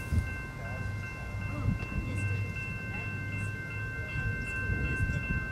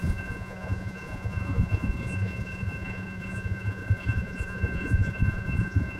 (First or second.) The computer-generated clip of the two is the second